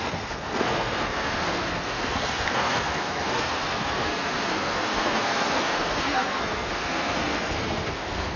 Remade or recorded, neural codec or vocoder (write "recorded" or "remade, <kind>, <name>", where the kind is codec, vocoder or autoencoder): remade, codec, SNAC